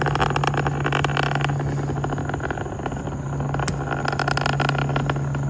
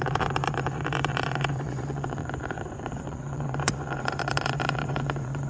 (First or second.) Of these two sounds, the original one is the first